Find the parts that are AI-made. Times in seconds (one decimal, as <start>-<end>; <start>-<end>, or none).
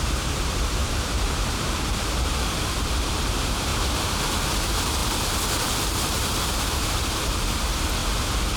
0.0-3.7; 4.3-5.0; 5.6-8.0